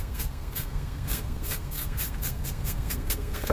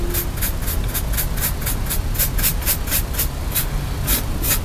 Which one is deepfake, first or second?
first